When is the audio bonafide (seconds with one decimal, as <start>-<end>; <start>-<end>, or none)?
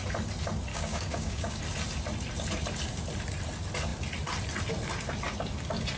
0.0-0.7; 1.6-6.0